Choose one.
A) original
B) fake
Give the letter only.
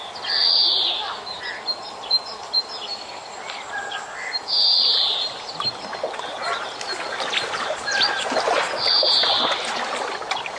B